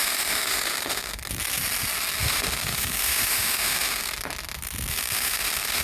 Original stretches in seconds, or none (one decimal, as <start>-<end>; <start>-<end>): 1.2-2.2; 4.1-4.9